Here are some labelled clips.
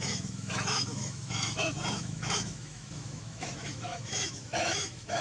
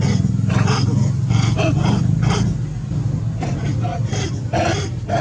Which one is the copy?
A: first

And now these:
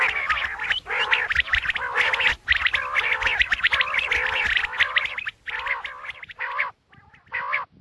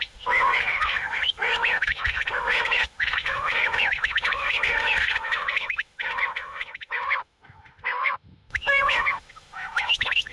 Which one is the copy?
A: second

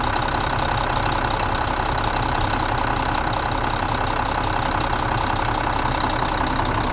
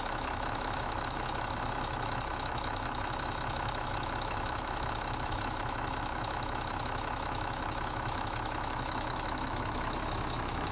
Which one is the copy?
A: second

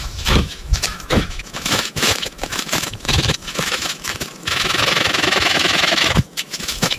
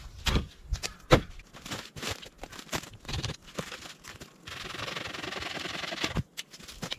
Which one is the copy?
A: first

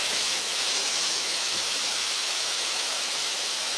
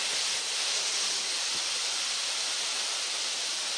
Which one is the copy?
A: first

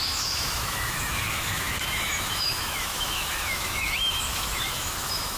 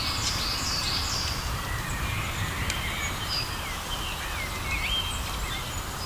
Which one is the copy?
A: first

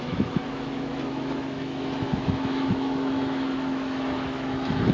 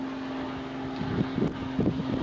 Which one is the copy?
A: first